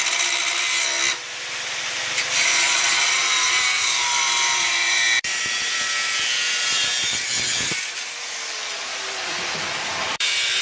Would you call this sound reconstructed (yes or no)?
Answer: yes